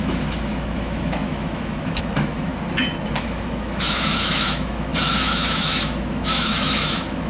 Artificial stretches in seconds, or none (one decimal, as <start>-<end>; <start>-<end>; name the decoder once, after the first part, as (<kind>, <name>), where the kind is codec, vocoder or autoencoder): 0.0-2.5 (autoencoder, DAC-VAE); 3.2-7.3